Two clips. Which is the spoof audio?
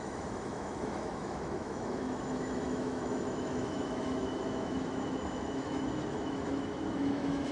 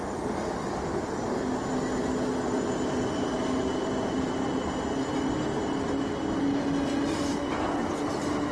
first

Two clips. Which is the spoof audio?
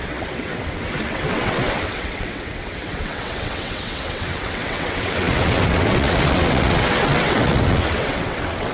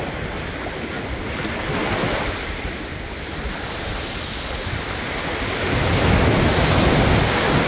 first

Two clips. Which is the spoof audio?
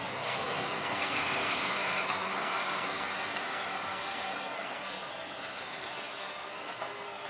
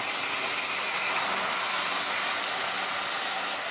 first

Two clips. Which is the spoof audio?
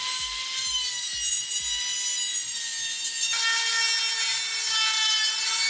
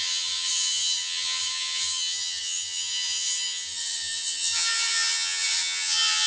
second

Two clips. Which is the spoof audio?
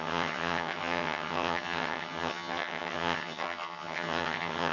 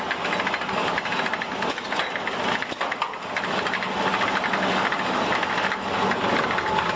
first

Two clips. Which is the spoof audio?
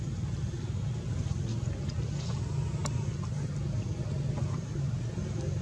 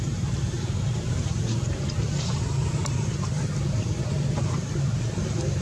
second